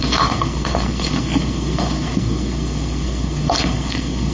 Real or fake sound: fake